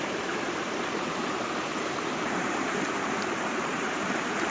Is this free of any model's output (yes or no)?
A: no